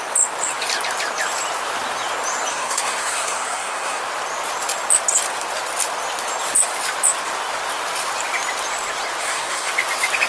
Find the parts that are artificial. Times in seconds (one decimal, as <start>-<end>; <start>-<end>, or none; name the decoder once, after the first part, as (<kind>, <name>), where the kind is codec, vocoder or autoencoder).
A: 2.5-4.0 (codec, SNAC); 9.2-9.7